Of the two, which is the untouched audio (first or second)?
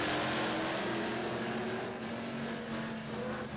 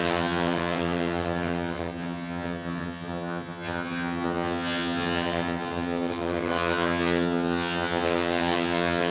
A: first